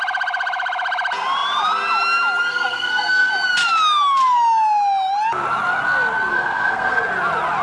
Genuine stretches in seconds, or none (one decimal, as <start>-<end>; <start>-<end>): 0.0-2.5; 3.3-6.3; 7.0-7.6